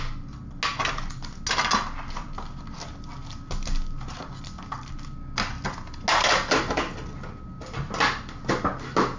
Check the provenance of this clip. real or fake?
real